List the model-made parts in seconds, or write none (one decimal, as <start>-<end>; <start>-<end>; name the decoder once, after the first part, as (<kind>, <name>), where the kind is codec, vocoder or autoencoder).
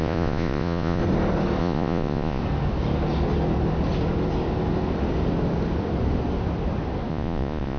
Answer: 0.0-1.0 (vocoder, Vocos); 1.6-2.4; 7.1-7.8